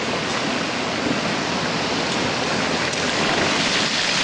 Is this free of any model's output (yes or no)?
yes